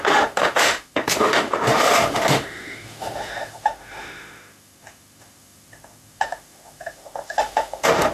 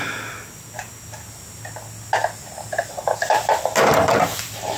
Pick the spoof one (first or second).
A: first